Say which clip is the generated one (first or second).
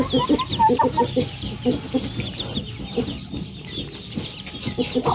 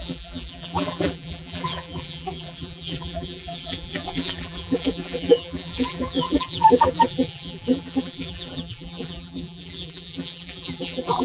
second